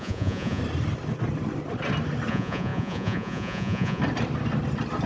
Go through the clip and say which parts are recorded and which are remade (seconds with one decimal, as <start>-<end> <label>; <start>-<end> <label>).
0.0-0.6 remade; 0.6-2.3 recorded; 2.3-4.0 remade; 4.0-5.1 recorded